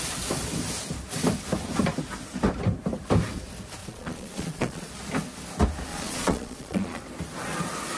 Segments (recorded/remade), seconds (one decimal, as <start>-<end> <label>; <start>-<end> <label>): 0.0-3.8 recorded; 3.8-4.9 remade; 4.9-5.9 recorded; 5.9-7.0 remade; 7.0-8.0 recorded